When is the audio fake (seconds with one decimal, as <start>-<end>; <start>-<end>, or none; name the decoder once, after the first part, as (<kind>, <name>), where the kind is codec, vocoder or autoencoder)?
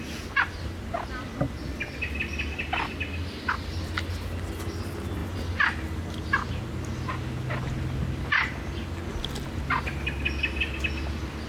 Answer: none